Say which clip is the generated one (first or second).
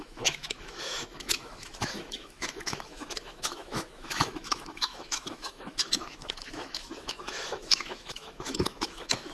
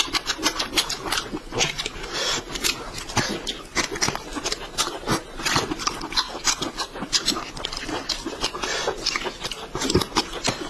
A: first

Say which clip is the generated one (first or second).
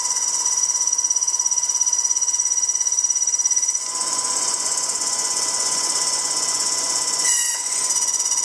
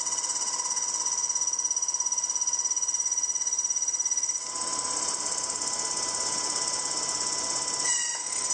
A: first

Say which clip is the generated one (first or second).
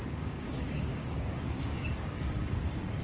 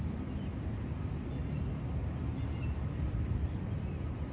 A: first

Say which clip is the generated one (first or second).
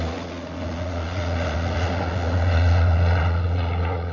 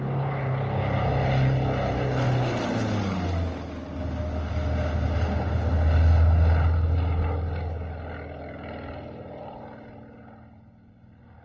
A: first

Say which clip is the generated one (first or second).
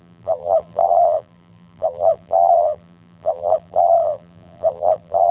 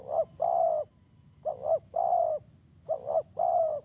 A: first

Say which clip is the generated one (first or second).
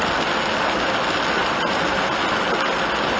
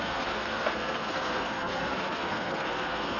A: second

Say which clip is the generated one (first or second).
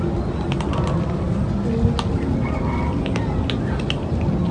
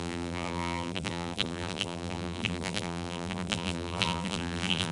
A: second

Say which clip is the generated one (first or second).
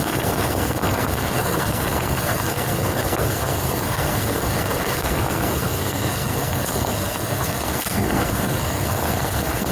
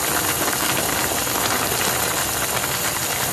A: first